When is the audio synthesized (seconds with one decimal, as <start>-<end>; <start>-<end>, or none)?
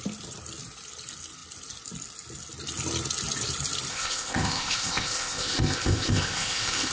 3.9-6.9